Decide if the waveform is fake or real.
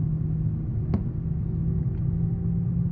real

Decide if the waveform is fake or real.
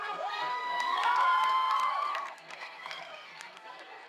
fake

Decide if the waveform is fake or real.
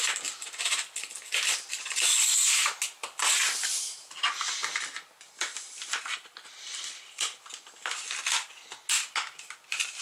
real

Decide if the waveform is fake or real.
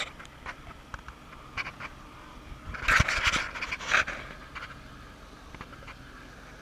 real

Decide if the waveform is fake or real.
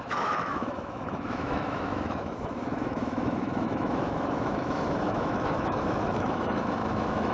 fake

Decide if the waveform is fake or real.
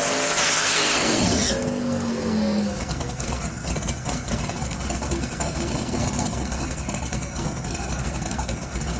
fake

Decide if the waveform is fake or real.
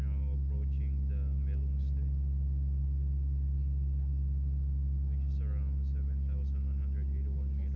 real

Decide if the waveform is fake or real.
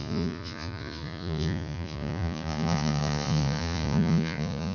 fake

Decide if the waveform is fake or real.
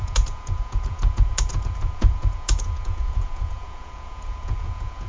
fake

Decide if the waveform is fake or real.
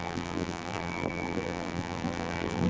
fake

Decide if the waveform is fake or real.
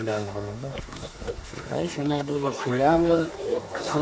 fake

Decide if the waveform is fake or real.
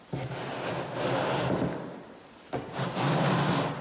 real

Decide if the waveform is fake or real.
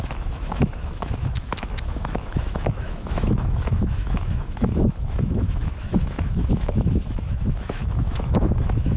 fake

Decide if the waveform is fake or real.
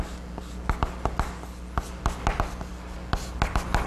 real